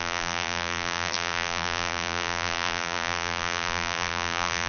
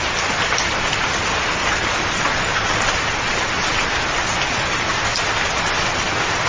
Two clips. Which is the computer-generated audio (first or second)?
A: first